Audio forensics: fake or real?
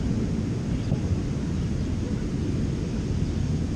real